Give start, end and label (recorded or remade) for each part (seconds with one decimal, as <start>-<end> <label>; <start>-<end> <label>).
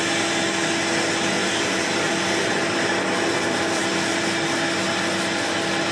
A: 0.0-5.9 recorded